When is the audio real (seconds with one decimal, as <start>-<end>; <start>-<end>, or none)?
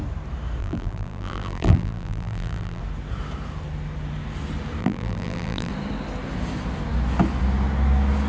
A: 0.0-0.6; 2.8-4.8; 5.7-8.3